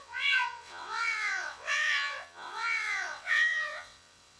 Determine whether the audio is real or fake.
fake